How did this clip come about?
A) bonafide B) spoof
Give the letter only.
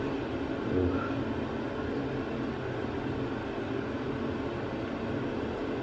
A